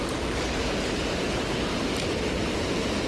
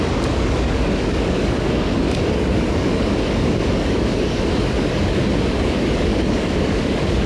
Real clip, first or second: first